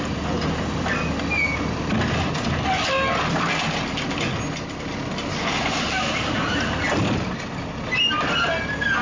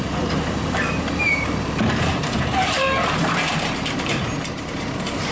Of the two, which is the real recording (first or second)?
first